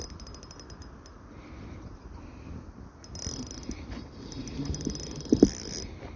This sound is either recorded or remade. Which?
recorded